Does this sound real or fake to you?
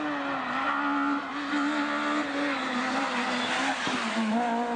real